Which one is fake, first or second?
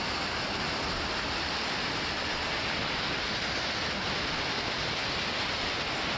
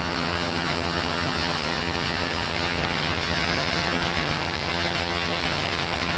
second